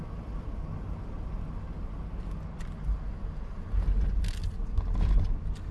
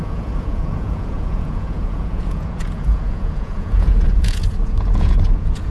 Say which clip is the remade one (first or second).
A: second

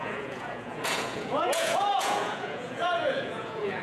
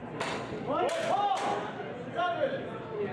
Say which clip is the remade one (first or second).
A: first